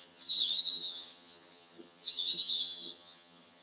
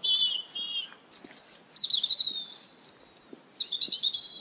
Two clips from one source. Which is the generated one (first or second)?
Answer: first